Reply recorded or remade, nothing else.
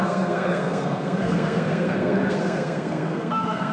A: remade